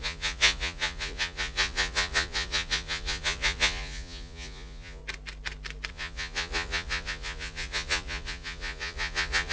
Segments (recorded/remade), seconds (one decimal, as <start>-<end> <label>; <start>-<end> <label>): 0.0-5.0 remade; 5.0-5.9 recorded; 5.9-9.5 remade